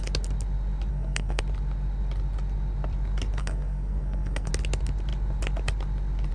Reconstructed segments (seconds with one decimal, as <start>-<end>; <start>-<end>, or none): 0.9-1.4; 3.4-4.5

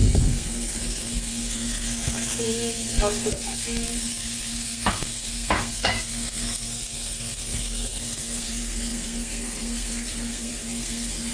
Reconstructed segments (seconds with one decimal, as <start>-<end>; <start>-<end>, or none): 0.0-11.3

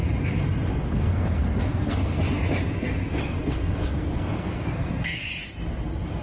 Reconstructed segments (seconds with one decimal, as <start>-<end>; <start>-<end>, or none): 0.7-2.2; 2.8-5.3

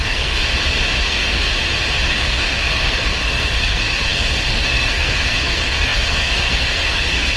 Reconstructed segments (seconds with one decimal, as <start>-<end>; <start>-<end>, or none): 0.0-0.4; 1.0-1.5; 2.0-7.4

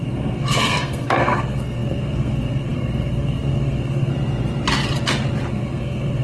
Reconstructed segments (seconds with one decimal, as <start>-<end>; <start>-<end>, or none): 0.0-4.1; 5.5-6.2

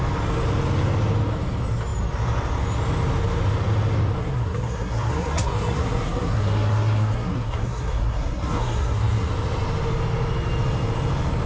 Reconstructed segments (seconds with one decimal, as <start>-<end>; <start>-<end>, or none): 4.2-9.3